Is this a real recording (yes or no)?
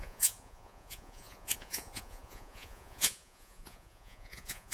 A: no